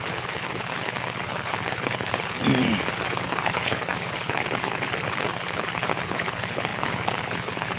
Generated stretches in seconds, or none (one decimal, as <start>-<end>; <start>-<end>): 0.0-2.4; 2.9-7.8